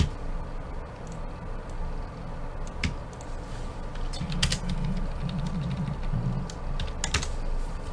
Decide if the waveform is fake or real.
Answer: real